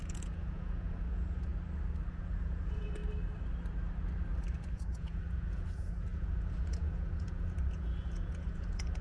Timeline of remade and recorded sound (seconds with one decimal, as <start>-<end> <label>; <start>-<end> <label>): 0.0-1.5 remade; 1.5-2.1 recorded; 2.1-3.0 remade; 3.0-4.7 recorded; 4.7-9.0 remade